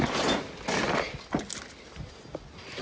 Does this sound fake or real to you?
real